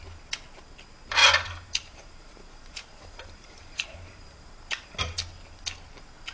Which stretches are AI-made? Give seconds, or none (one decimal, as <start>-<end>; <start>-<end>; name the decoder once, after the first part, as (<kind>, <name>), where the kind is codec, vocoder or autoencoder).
1.2-5.0 (vocoder, BigVGAN v2)